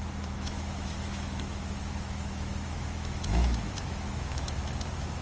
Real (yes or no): no